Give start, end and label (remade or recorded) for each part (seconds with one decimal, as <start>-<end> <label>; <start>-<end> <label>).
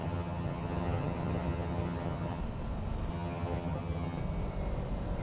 0.0-2.4 remade; 2.4-3.1 recorded; 3.1-4.2 remade; 4.2-5.2 recorded